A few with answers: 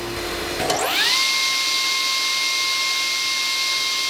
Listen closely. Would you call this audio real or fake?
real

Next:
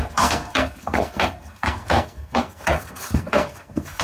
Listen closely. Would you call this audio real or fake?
fake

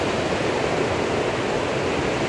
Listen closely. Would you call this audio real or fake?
real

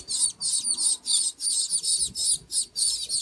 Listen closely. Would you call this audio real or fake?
real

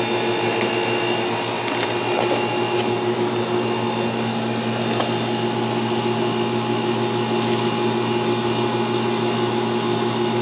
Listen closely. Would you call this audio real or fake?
real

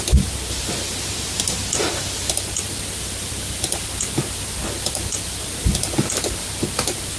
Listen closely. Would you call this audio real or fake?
real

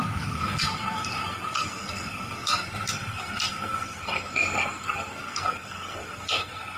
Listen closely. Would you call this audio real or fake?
fake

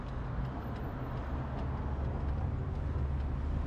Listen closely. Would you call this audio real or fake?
real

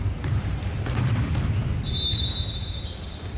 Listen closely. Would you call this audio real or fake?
real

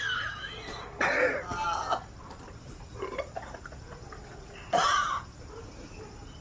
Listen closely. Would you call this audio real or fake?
real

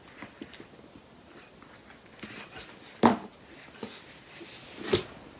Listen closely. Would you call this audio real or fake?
real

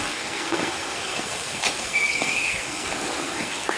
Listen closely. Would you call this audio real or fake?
fake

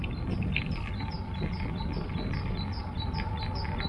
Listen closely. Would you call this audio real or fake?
real